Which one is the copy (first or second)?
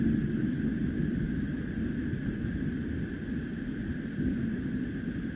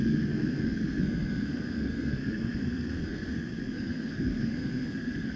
second